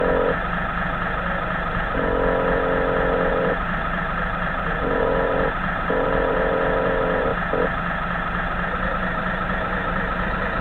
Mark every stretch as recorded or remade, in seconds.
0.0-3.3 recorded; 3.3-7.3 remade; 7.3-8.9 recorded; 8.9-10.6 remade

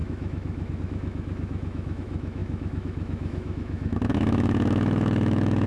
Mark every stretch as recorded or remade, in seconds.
0.0-5.7 remade